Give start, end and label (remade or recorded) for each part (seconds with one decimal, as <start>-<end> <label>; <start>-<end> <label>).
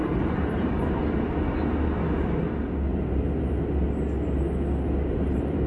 0.0-1.0 remade; 1.0-2.9 recorded; 2.9-3.5 remade; 3.5-5.1 recorded; 5.1-5.7 remade